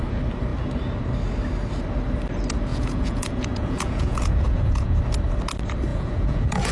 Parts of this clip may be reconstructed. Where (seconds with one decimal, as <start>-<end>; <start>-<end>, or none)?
2.7-5.0; 5.9-6.7